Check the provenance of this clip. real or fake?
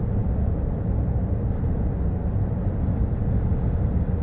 real